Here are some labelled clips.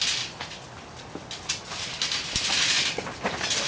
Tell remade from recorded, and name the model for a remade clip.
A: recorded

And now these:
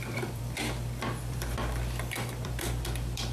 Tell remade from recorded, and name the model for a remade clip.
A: remade, vocoder, BigVGAN v2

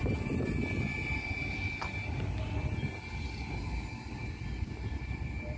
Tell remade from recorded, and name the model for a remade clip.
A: recorded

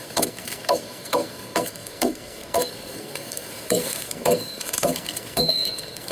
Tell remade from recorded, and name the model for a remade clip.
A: remade, codec, SNAC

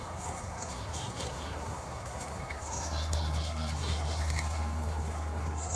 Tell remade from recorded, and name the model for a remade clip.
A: remade, codec, SNAC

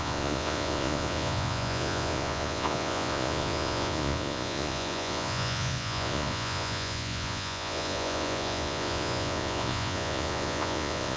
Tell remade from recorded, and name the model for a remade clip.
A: remade, vocoder, Vocos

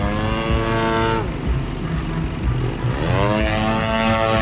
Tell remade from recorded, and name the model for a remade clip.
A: recorded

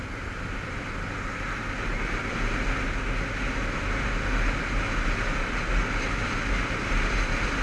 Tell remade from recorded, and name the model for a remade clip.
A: recorded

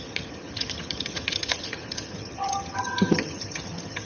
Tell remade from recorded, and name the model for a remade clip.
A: remade, vocoder, HiFi-GAN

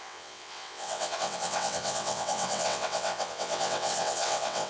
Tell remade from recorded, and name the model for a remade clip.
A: remade, vocoder, WaveNeXt